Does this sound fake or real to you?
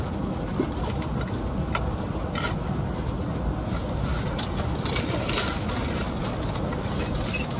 real